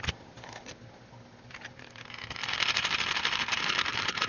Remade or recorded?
recorded